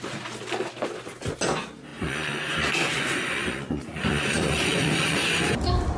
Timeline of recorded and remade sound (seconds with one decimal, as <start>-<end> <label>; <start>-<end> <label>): 0.0-1.9 recorded; 1.9-5.5 remade; 5.5-6.0 recorded